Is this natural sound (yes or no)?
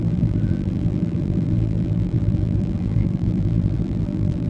no